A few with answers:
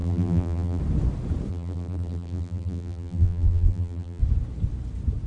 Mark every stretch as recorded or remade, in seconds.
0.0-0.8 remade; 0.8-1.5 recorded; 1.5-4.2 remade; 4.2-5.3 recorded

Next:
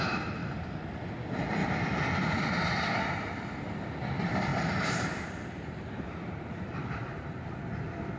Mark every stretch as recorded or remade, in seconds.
0.0-1.6 recorded; 1.6-2.4 remade; 2.4-4.5 recorded; 4.5-7.4 remade; 7.4-8.2 recorded

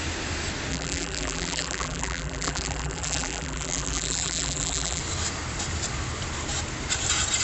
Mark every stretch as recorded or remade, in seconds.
0.0-0.7 recorded; 0.7-5.0 remade; 5.0-7.4 recorded

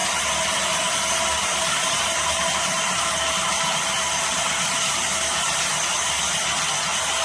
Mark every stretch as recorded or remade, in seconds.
0.0-1.3 recorded; 1.3-3.1 remade; 3.1-3.5 recorded; 3.5-5.7 remade; 5.7-7.2 recorded

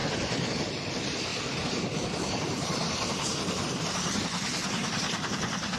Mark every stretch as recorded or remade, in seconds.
0.0-0.7 remade; 0.7-5.8 recorded